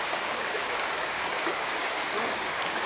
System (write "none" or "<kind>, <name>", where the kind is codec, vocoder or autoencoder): codec, DAC